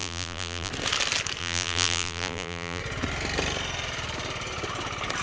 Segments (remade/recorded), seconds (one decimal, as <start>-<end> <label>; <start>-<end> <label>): 0.0-0.7 remade; 0.7-1.4 recorded; 1.4-2.8 remade; 2.8-5.2 recorded